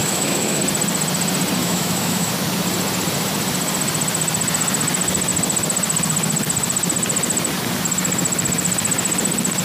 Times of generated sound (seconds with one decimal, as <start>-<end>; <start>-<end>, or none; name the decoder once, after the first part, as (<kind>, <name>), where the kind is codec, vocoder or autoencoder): 0.0-0.6 (autoencoder, DAC-VAE); 1.6-2.3